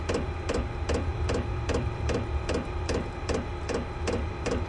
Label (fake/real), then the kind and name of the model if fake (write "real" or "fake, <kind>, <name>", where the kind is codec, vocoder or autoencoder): fake, vocoder, BigVGAN v2